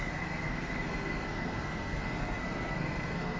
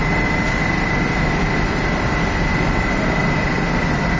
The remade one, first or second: first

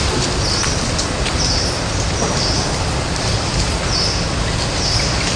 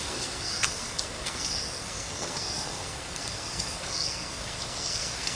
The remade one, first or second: second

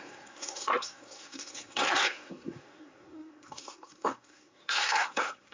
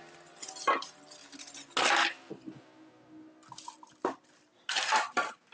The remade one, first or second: first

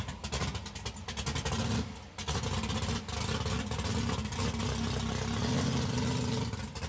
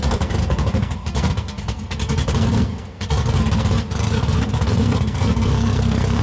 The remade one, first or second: second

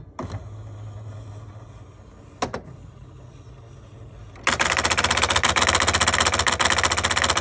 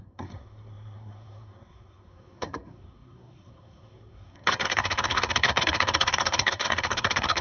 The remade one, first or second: second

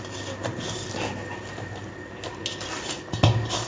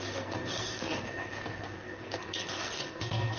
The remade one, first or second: second